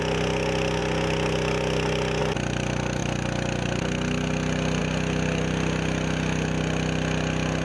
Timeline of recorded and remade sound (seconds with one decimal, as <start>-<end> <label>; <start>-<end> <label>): 0.0-7.6 recorded